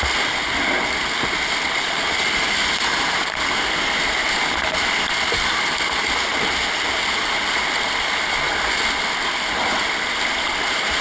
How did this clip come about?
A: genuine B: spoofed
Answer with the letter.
A